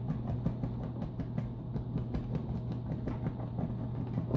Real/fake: real